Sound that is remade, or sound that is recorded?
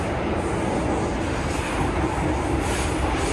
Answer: recorded